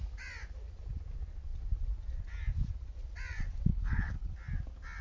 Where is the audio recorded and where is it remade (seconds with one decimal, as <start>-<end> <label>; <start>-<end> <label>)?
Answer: 0.0-3.7 recorded; 3.7-4.3 remade; 4.3-5.0 recorded